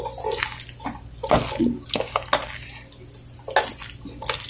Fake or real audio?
real